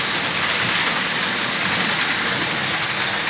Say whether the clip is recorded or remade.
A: recorded